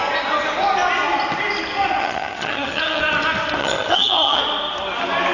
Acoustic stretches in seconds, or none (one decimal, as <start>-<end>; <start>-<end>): 0.0-2.0; 3.0-3.6; 4.4-5.3